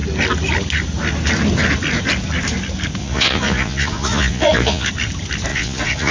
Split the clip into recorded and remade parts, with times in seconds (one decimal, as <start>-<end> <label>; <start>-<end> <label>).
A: 0.0-3.0 recorded; 3.0-4.9 remade; 4.9-5.5 recorded; 5.5-6.1 remade